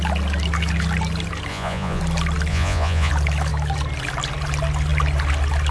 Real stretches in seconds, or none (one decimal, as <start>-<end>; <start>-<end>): 0.0-1.5; 2.0-2.5; 3.1-5.7